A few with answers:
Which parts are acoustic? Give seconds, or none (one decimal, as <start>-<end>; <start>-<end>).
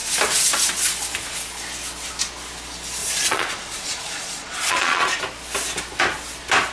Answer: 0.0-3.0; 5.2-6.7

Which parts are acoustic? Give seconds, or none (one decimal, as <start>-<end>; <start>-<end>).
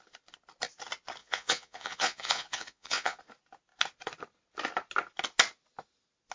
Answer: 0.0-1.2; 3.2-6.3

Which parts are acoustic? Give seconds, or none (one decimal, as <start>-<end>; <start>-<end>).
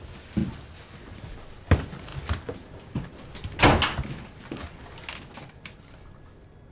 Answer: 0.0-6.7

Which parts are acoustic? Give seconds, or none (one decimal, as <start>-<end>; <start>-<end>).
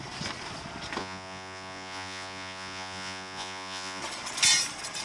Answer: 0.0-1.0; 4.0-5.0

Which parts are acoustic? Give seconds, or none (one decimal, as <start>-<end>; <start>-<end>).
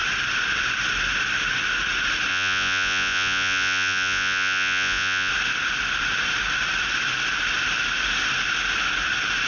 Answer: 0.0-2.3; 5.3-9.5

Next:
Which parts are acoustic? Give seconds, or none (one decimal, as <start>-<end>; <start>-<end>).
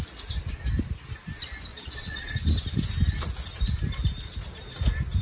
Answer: 0.0-1.7; 2.3-5.2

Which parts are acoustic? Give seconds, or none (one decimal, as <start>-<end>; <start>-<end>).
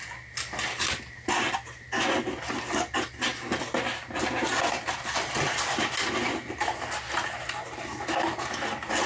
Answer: 0.0-9.1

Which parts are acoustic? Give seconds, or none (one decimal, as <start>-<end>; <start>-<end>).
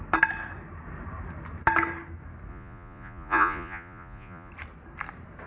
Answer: 0.0-2.5; 4.5-5.5